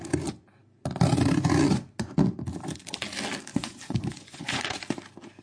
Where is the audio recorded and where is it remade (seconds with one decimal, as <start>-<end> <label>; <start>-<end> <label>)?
0.0-3.5 recorded; 3.5-4.6 remade; 4.6-5.4 recorded